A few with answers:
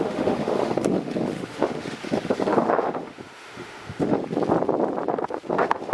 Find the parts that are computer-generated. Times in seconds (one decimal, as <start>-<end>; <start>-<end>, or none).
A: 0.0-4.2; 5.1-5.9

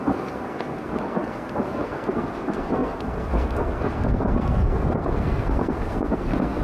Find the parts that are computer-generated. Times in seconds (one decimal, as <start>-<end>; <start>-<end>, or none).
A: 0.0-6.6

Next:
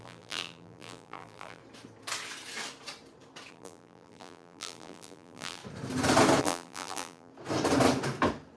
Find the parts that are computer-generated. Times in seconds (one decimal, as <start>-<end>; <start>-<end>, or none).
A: 0.0-1.6; 3.5-5.6; 6.4-7.3